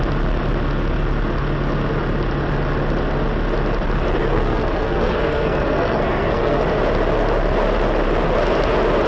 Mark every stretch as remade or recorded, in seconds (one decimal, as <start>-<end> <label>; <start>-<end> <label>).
0.0-4.2 recorded; 4.2-6.6 remade; 6.6-9.1 recorded

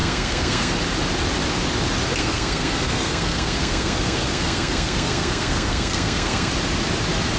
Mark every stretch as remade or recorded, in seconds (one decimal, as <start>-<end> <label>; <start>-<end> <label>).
0.0-0.7 remade; 0.7-2.2 recorded; 2.2-6.5 remade; 6.5-7.4 recorded

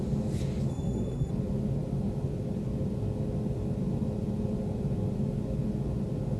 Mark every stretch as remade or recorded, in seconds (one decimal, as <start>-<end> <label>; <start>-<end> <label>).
0.0-0.7 recorded; 0.7-1.3 remade; 1.3-6.4 recorded

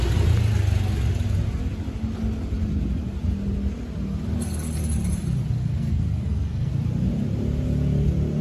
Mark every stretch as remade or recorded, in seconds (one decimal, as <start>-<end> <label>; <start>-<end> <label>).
0.0-5.6 recorded; 5.6-6.7 remade; 6.7-8.4 recorded

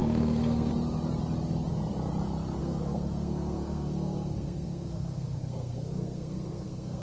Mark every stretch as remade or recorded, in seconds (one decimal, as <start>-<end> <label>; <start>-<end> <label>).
0.0-0.7 remade; 0.7-2.6 recorded; 2.6-7.0 remade

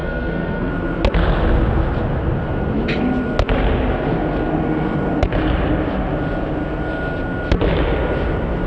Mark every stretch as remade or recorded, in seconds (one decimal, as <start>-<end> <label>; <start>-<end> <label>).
0.0-0.7 remade; 0.7-8.7 recorded

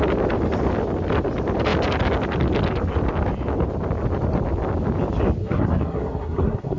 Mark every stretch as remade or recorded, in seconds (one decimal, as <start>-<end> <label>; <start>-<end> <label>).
0.0-5.4 recorded; 5.4-6.8 remade